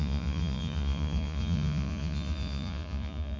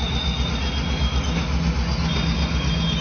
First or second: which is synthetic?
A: first